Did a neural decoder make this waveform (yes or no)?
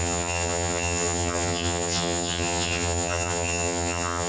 yes